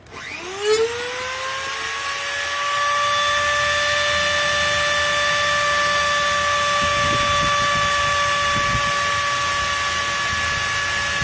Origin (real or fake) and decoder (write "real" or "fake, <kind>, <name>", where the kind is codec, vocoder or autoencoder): real